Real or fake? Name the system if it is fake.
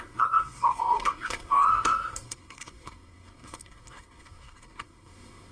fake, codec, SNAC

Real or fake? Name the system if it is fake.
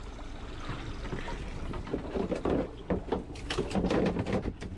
real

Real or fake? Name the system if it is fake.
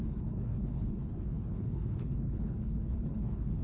fake, codec, HILCodec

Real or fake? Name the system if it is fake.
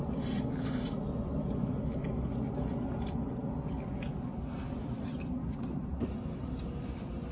real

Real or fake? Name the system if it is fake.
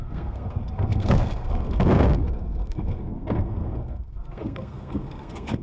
fake, codec, SNAC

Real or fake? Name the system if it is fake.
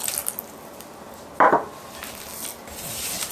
real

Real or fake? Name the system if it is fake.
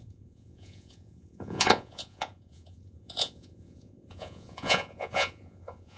fake, vocoder, Vocos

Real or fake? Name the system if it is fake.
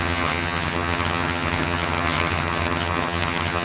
fake, vocoder, HiFi-GAN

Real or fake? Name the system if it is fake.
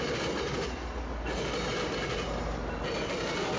real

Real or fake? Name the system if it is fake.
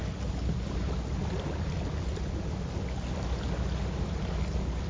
real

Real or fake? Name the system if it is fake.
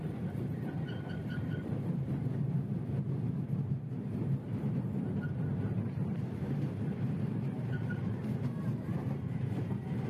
fake, vocoder, BigVGAN v2